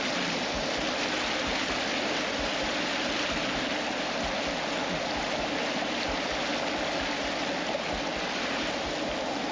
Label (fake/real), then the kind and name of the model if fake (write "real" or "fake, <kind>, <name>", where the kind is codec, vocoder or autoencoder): real